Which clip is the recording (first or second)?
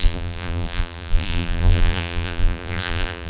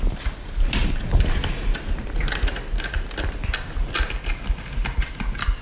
second